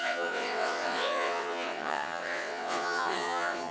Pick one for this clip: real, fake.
fake